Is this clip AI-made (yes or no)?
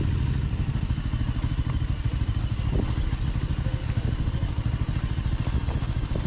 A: no